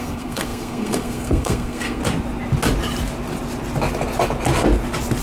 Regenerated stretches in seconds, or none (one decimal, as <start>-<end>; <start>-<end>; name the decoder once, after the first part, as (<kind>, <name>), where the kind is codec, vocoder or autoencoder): 0.0-2.0 (codec, SNAC)